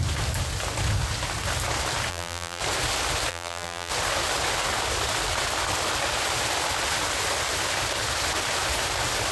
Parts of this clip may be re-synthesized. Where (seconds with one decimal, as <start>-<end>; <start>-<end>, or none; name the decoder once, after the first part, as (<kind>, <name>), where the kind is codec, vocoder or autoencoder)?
2.1-2.6 (vocoder, BigVGAN v2); 3.3-3.9